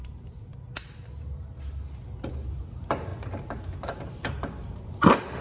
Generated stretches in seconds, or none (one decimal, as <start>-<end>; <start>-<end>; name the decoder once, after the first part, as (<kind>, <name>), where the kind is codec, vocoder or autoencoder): 0.0-3.1 (vocoder, BigVGAN v2); 4.3-5.4